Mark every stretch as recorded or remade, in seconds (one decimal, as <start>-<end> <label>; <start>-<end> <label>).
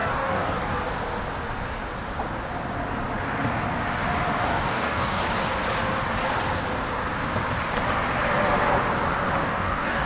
0.0-0.8 remade; 0.8-4.5 recorded; 4.5-5.2 remade; 5.2-9.4 recorded; 9.4-10.1 remade